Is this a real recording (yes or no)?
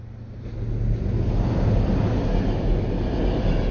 yes